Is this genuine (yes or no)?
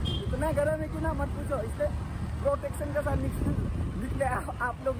yes